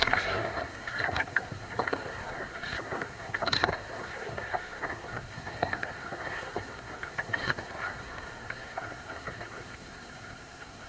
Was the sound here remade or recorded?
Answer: remade